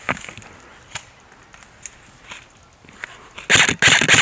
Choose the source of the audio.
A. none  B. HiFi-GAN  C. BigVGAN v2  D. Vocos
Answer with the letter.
A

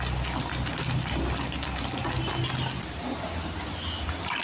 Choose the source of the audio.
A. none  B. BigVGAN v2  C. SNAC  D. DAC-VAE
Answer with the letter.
A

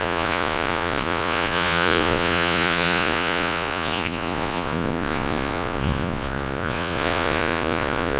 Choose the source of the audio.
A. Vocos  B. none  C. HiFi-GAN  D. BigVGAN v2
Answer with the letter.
A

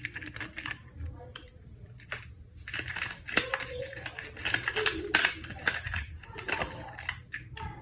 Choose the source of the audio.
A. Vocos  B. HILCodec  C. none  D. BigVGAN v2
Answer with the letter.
C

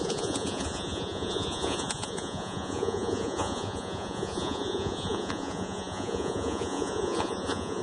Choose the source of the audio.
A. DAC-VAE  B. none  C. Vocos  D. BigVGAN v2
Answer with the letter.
C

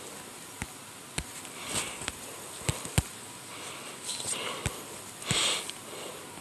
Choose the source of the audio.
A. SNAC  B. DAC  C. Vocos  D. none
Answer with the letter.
D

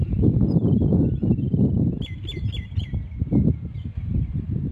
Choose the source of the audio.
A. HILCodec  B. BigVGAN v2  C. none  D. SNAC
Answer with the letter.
C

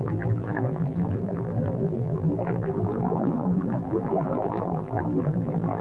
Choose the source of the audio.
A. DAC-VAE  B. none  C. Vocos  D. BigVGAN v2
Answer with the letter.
D